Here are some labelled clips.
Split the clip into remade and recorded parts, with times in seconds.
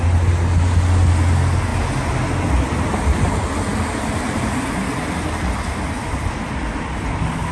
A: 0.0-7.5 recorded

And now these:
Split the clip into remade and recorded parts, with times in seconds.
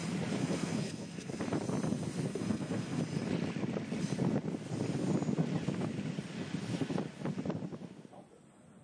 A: 0.0-0.4 recorded; 0.4-1.4 remade; 1.4-2.3 recorded; 2.3-3.0 remade; 3.0-8.8 recorded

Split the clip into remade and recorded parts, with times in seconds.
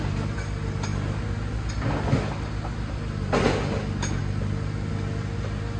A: 0.0-5.8 recorded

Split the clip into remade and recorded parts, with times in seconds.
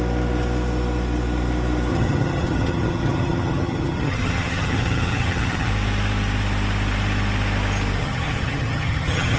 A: 0.0-1.9 recorded; 1.9-5.7 remade; 5.7-8.0 recorded; 8.0-9.4 remade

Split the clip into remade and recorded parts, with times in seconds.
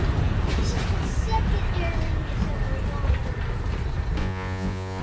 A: 0.0-4.2 recorded; 4.2-5.0 remade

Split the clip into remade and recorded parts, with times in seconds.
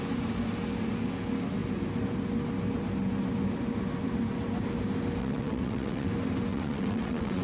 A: 0.0-5.2 recorded; 5.2-6.1 remade; 6.1-6.5 recorded; 6.5-7.4 remade